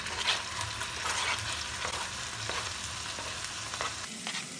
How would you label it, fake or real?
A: real